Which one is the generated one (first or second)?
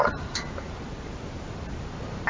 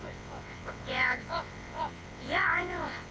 second